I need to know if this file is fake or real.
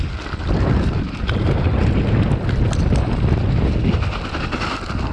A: real